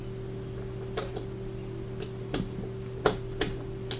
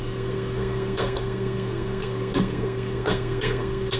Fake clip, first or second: second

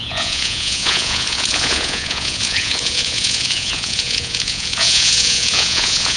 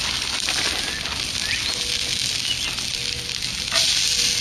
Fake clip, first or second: first